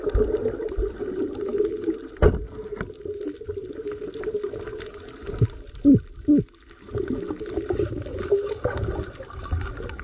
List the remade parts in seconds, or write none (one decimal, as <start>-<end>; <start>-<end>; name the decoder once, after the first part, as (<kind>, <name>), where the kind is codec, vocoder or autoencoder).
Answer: none